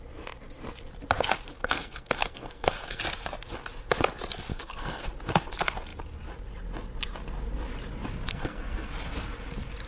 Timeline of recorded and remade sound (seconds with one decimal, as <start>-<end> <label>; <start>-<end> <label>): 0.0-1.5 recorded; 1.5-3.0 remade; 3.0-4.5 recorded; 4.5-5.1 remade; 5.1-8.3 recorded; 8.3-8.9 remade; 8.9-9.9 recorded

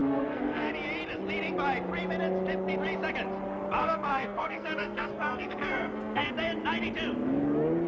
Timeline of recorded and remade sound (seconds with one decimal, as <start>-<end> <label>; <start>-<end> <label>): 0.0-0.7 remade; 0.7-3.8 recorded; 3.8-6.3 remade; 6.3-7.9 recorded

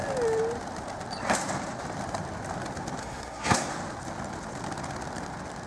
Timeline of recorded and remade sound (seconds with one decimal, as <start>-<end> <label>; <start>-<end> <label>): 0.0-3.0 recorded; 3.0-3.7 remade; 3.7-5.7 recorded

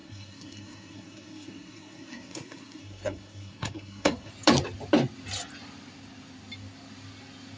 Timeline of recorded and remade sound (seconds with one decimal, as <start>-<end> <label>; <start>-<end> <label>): 0.0-4.3 remade; 4.3-7.6 recorded

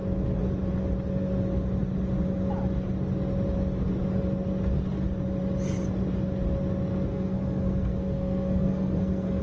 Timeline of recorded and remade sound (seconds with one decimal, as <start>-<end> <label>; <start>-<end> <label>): 0.0-7.1 recorded; 7.1-9.4 remade

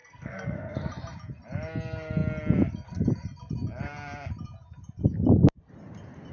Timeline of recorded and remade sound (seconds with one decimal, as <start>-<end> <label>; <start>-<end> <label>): 0.0-0.9 remade; 0.9-6.3 recorded

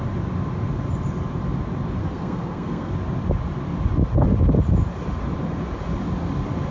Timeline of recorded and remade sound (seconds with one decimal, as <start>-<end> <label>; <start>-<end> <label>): 0.0-2.0 recorded; 2.0-2.9 remade; 2.9-6.7 recorded

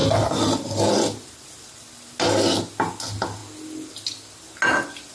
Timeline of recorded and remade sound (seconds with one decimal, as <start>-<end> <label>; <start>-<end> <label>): 0.0-5.1 recorded